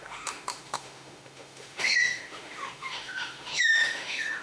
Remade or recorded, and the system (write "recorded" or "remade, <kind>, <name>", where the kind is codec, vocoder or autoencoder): remade, autoencoder, DAC-VAE